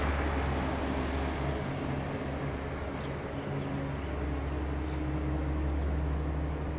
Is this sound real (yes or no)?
yes